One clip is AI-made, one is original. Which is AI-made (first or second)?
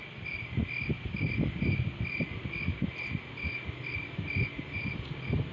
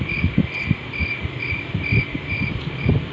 second